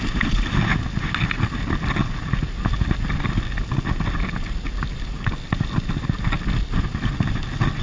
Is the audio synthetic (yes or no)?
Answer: no